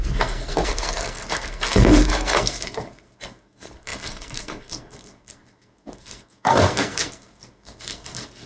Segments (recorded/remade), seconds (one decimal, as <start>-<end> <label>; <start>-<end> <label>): 0.0-8.5 remade